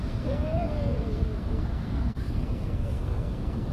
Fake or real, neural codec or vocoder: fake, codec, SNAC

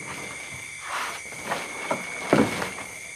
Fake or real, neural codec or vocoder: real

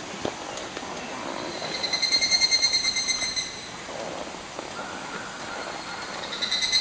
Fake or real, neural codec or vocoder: real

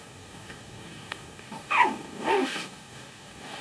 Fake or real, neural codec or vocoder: fake, codec, DAC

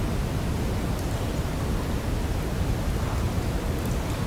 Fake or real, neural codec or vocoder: real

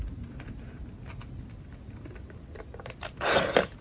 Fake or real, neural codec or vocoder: real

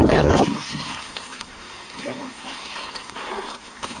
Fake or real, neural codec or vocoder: fake, codec, SNAC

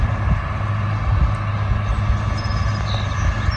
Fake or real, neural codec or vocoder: real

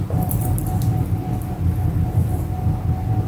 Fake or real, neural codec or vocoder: real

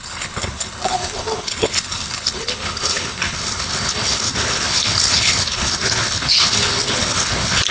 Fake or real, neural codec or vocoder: fake, codec, HILCodec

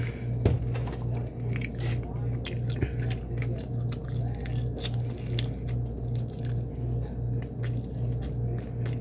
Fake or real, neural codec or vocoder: real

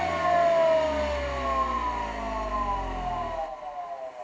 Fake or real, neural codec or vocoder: real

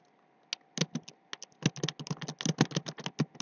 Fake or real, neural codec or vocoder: real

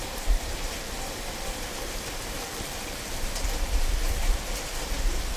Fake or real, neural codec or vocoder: fake, vocoder, BigVGAN v2